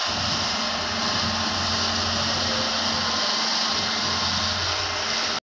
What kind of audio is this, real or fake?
real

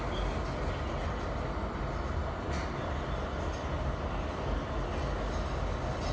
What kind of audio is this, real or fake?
real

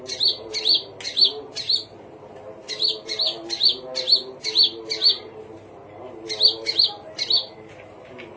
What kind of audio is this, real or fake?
real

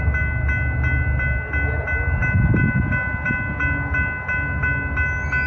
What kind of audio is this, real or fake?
real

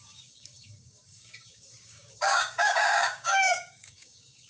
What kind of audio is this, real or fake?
fake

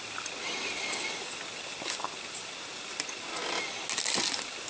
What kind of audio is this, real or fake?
real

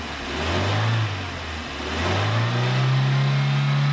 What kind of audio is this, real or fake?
real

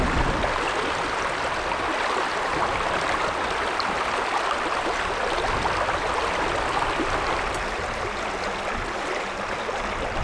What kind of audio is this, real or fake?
real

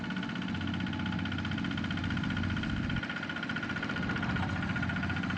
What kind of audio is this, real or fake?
real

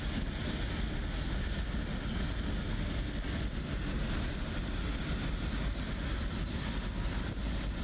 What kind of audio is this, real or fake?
real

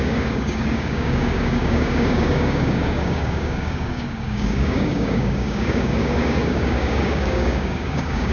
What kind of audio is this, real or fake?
fake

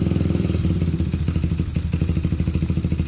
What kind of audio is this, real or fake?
real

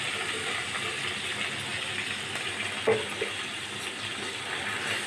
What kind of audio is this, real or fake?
real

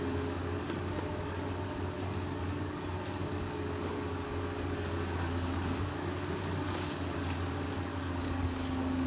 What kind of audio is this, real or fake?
fake